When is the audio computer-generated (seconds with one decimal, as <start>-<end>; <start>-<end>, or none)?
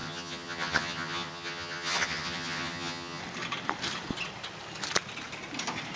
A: 0.0-3.2